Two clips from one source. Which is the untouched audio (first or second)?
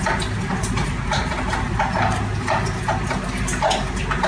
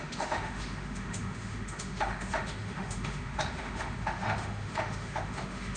first